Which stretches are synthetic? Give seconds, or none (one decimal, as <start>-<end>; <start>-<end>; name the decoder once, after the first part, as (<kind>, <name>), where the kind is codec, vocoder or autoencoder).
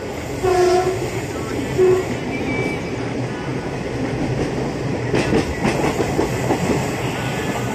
none